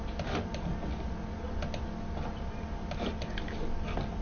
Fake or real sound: real